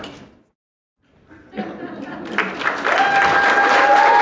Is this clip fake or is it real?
real